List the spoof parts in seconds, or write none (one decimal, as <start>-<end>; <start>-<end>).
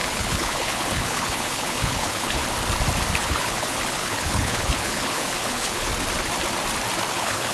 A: 0.0-2.4; 3.2-5.9; 7.1-7.5